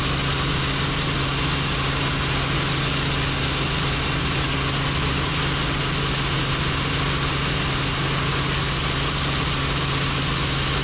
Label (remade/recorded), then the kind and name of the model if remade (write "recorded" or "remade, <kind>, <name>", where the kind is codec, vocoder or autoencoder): recorded